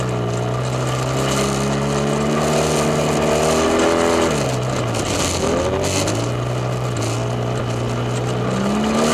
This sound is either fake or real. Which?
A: real